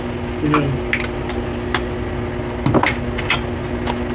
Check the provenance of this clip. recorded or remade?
recorded